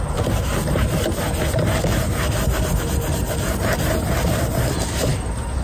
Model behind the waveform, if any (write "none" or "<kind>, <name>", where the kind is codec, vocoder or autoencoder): none